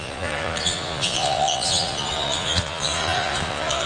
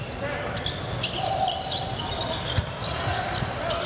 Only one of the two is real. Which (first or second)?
second